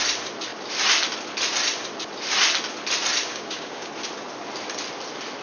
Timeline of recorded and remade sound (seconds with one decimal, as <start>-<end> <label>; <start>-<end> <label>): 0.0-3.3 recorded; 3.3-3.9 remade; 3.9-5.4 recorded